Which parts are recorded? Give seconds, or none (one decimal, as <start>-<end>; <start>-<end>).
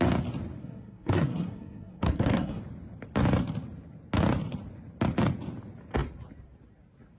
0.0-0.6; 2.6-7.2